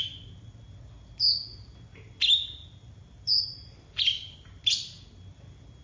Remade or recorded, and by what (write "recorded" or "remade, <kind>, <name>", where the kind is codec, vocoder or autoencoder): recorded